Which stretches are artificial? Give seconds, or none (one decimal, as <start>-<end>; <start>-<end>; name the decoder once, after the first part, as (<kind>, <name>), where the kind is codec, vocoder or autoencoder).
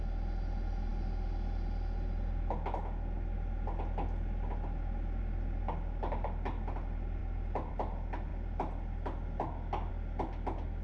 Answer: none